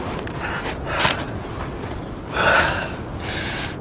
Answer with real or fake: real